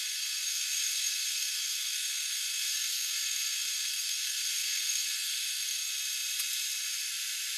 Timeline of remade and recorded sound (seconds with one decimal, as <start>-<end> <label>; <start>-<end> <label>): 0.0-5.9 remade; 5.9-7.6 recorded